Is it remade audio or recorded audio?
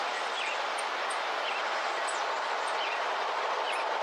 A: recorded